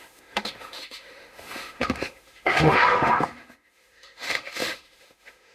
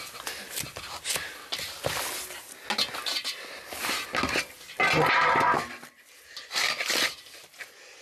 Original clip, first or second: second